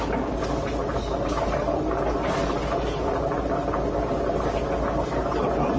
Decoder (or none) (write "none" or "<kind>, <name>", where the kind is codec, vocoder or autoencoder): none